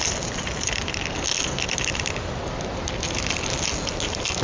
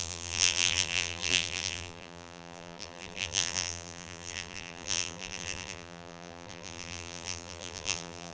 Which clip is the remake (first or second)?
second